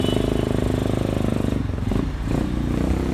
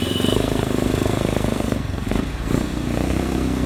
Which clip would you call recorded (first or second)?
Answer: first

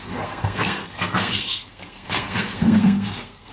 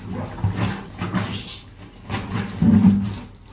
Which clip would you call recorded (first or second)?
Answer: second